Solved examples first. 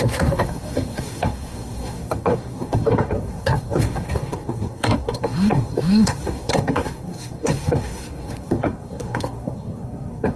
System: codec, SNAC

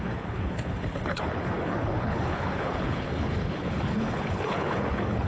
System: codec, HILCodec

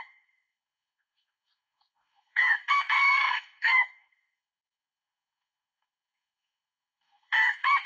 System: codec, DAC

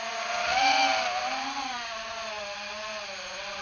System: none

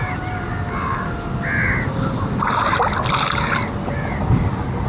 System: none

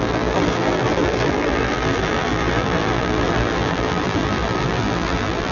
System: vocoder, BigVGAN v2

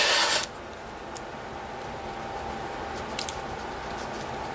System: none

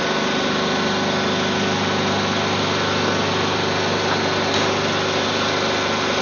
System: none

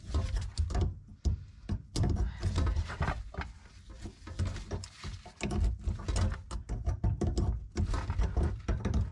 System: none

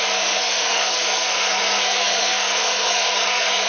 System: codec, SNAC